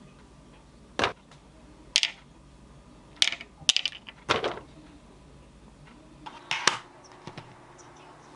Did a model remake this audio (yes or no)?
no